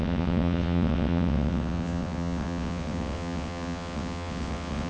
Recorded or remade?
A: remade